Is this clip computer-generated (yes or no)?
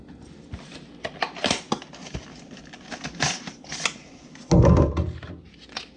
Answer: no